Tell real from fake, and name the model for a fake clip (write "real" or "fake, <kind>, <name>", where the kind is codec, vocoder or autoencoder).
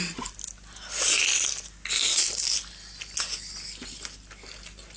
real